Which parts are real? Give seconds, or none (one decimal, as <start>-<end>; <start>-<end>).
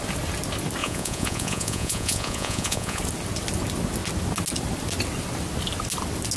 0.0-0.8; 3.0-6.4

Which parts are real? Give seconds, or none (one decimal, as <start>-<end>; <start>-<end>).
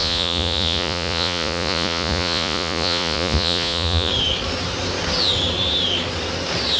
4.1-6.8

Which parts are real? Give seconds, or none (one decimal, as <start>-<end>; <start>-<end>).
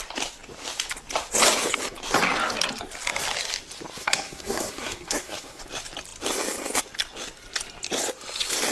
0.0-4.0; 5.6-8.7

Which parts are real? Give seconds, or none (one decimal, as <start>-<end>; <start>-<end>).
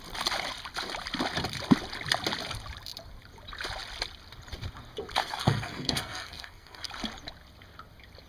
0.0-5.2; 6.9-8.3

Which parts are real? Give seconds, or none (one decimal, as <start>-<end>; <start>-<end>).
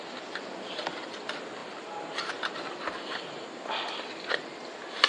0.0-5.1